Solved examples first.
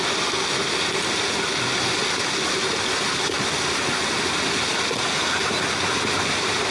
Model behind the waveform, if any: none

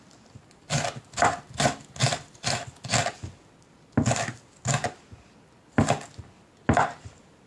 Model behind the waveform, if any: none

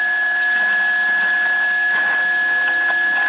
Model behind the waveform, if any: none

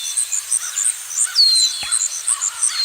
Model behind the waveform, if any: none